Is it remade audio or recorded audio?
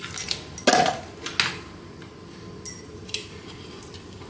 recorded